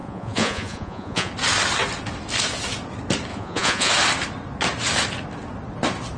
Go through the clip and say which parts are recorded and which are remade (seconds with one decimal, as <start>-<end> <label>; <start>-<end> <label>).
0.0-1.3 remade; 1.3-3.3 recorded; 3.3-3.9 remade; 3.9-6.2 recorded

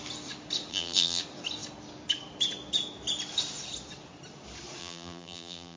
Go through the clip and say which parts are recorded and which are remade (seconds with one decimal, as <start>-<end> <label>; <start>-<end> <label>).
0.0-0.7 recorded; 0.7-1.2 remade; 1.2-4.8 recorded; 4.8-5.8 remade

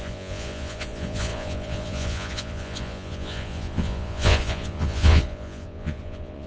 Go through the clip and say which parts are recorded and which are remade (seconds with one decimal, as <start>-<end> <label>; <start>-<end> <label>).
0.0-6.5 remade

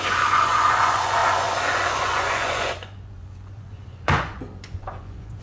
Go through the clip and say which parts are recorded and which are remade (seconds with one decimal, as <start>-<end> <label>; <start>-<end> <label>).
0.0-5.4 remade